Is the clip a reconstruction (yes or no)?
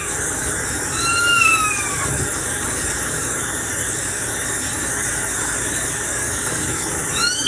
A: yes